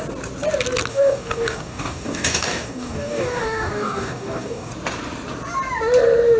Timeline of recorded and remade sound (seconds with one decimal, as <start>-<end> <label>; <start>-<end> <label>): 0.0-0.9 recorded; 0.9-4.7 remade; 4.7-6.4 recorded